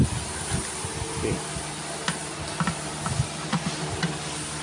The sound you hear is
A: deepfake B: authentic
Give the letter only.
B